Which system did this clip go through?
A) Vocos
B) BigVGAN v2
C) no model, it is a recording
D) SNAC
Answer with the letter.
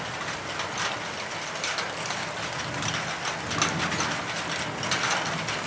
C